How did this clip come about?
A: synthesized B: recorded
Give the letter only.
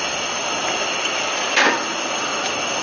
B